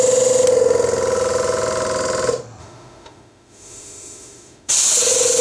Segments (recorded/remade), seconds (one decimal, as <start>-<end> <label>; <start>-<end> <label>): 0.0-2.6 recorded; 2.6-4.7 remade; 4.7-5.4 recorded